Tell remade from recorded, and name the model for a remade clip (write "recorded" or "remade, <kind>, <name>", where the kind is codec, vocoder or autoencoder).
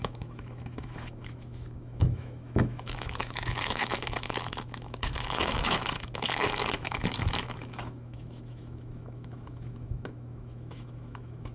remade, autoencoder, DAC-VAE